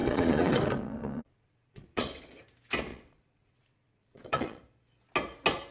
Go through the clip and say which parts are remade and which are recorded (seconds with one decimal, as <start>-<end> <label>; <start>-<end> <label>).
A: 0.0-2.4 remade; 2.4-2.9 recorded; 2.9-4.6 remade; 4.6-5.7 recorded